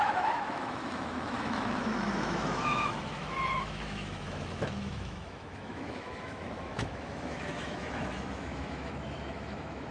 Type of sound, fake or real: fake